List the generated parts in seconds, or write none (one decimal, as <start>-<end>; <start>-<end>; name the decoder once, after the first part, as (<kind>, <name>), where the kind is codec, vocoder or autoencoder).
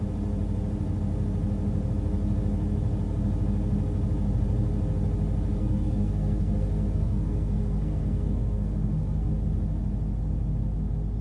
5.6-9.3 (codec, SNAC)